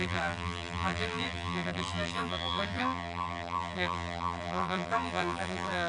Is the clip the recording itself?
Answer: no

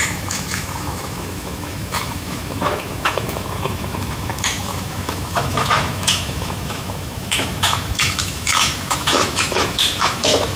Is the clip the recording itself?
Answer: no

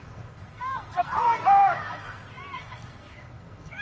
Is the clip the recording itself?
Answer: no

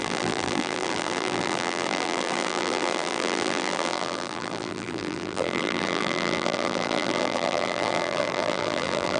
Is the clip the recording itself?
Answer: no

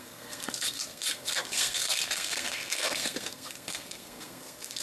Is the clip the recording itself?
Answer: no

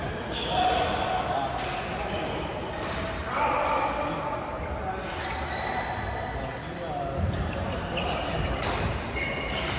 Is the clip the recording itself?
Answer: yes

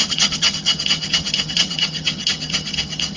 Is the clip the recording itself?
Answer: no